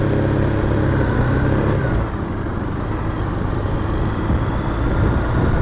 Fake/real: real